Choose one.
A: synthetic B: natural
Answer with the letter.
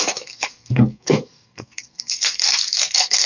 A